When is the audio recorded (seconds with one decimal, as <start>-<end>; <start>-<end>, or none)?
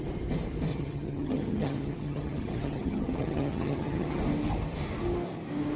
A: 0.0-0.7; 4.2-5.8